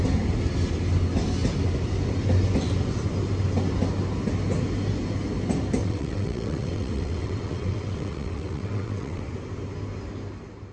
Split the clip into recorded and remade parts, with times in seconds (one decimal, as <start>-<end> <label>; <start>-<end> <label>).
0.0-5.8 recorded; 5.8-9.2 remade; 9.2-10.7 recorded